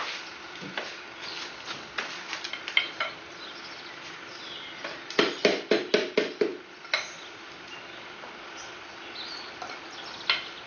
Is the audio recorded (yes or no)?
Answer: yes